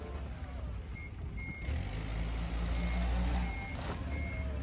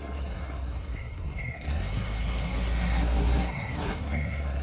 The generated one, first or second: second